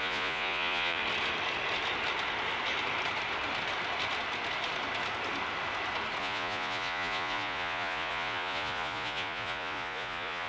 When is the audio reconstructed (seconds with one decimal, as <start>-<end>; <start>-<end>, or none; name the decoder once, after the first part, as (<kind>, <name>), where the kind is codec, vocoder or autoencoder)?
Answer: 0.0-1.0 (vocoder, Vocos); 6.2-10.5